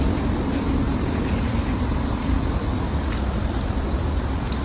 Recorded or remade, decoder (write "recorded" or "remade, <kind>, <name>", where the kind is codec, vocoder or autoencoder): remade, vocoder, BigVGAN v2